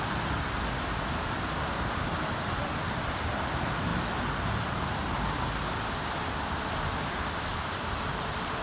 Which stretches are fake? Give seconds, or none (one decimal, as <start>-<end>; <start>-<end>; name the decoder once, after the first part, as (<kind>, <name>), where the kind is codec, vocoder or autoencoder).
0.0-3.9 (vocoder, BigVGAN v2); 6.9-8.6